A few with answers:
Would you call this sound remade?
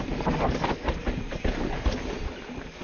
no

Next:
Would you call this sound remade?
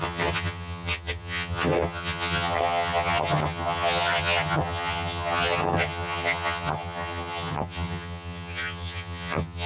yes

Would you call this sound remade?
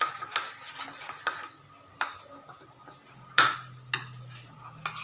no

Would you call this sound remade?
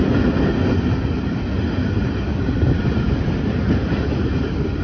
no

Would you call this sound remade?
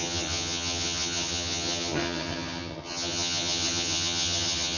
yes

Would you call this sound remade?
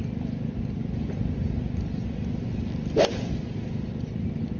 no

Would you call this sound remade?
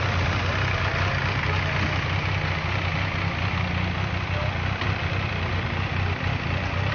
no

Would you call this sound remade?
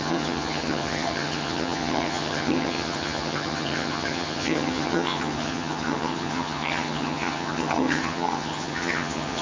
yes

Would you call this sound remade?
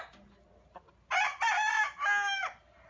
no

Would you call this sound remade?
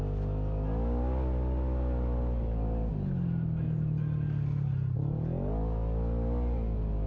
no